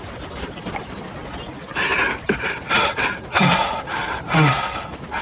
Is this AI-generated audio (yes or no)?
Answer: no